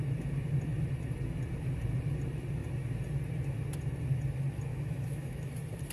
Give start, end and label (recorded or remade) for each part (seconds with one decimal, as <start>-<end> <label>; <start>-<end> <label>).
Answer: 0.0-4.7 recorded; 4.7-5.5 remade; 5.5-5.9 recorded